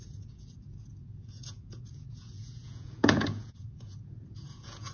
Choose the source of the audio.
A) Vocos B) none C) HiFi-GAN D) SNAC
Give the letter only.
A